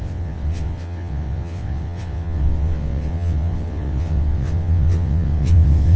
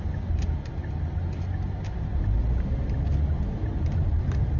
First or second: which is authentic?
second